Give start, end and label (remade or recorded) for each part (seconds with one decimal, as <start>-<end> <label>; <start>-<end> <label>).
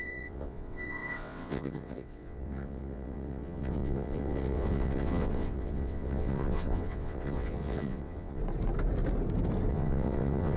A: 0.0-8.4 remade; 8.4-9.7 recorded; 9.7-10.6 remade